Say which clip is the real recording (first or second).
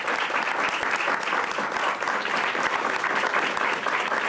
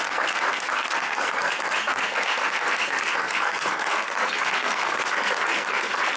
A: first